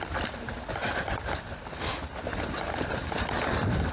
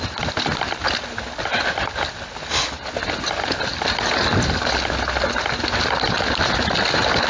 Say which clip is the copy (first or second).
first